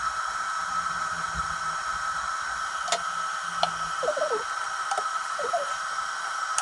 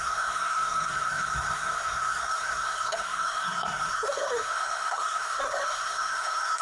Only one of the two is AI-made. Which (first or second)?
second